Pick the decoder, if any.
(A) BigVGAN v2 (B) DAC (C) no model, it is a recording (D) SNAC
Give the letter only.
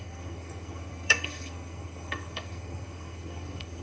D